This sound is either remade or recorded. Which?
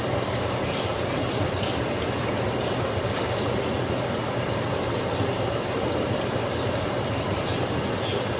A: remade